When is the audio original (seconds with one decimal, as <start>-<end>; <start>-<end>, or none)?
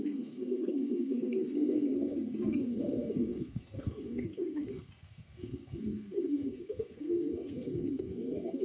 none